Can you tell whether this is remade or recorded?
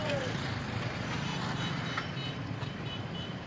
remade